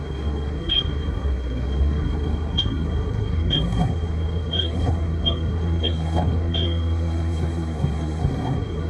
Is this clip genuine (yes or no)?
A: no